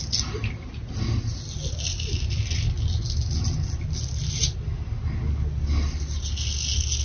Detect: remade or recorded recorded